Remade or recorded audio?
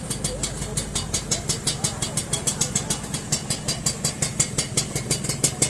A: recorded